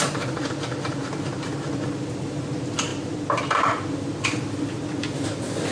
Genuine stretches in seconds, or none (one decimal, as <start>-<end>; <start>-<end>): 0.0-5.7